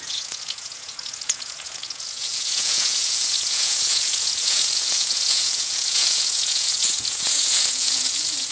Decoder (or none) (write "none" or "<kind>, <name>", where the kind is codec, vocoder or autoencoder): vocoder, Vocos